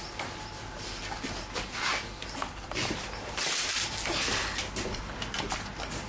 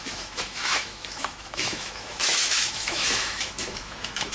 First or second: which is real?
first